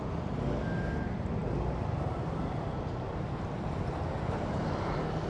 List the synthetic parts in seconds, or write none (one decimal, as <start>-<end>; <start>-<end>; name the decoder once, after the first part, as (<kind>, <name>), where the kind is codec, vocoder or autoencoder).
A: none